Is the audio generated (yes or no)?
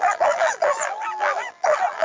yes